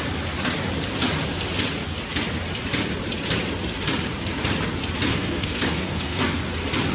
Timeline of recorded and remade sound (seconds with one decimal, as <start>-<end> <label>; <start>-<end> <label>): 0.0-5.1 recorded; 5.1-6.4 remade; 6.4-6.9 recorded